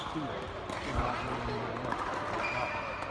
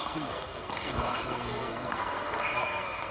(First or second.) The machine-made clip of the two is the second